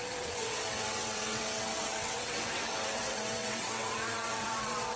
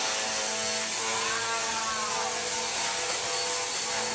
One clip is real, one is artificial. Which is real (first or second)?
second